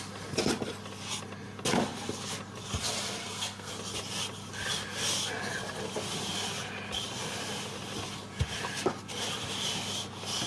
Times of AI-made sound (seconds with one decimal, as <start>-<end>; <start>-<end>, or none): 3.2-3.7